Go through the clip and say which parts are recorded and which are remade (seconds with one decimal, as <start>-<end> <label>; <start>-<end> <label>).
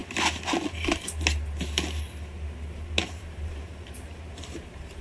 0.0-3.0 recorded; 3.0-5.0 remade